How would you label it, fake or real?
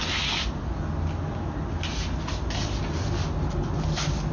real